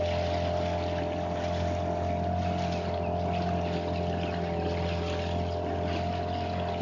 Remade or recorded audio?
recorded